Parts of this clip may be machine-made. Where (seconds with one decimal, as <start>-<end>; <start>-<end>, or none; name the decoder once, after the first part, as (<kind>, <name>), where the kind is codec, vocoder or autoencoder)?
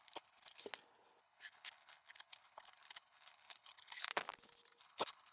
0.0-0.6 (codec, HILCodec); 1.2-4.1; 4.8-5.3